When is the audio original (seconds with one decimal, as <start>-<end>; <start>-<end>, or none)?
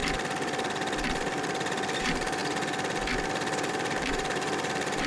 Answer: 0.0-2.0; 2.4-3.7